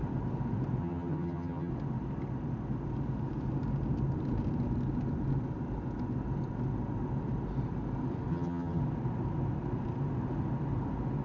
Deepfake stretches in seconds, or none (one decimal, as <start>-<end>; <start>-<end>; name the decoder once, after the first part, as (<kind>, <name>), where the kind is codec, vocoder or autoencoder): 0.8-1.7 (vocoder, HiFi-GAN); 8.3-8.8